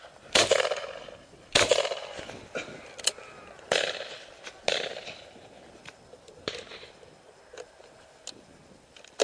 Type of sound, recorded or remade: recorded